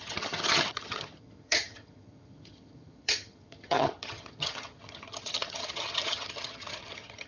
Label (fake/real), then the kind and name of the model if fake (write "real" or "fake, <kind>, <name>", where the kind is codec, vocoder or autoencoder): fake, vocoder, HiFi-GAN